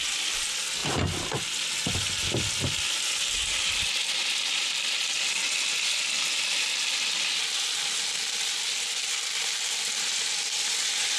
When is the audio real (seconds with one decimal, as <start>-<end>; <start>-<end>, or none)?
0.0-11.2